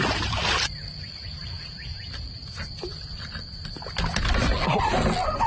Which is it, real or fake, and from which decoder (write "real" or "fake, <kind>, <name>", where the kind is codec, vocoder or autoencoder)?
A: real